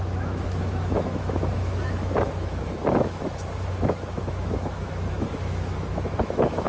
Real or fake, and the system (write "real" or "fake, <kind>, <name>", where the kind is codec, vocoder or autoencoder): fake, autoencoder, DAC-VAE